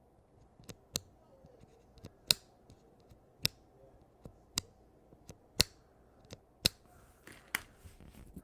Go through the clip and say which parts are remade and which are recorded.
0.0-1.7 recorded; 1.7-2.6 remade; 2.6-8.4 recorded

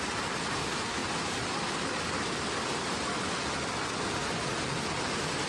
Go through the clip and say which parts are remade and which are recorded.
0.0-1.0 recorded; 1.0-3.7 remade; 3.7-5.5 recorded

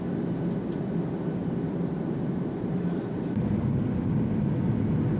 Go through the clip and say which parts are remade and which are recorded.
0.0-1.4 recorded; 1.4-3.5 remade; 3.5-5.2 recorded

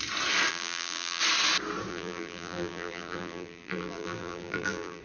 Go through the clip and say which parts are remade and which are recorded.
0.0-0.5 recorded; 0.5-1.2 remade; 1.2-1.9 recorded; 1.9-5.0 remade

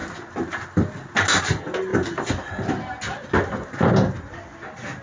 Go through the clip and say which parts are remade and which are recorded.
0.0-5.0 recorded

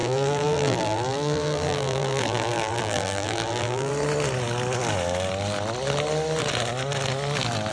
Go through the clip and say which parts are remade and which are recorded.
0.0-3.9 remade; 3.9-7.7 recorded

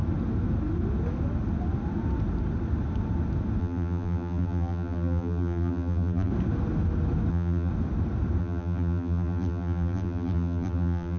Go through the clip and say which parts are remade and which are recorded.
0.0-3.6 recorded; 3.6-6.3 remade; 6.3-7.3 recorded; 7.3-7.7 remade; 7.7-8.4 recorded; 8.4-11.2 remade

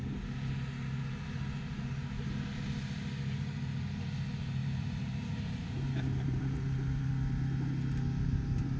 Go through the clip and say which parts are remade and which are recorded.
0.0-4.6 recorded; 4.6-7.1 remade; 7.1-8.8 recorded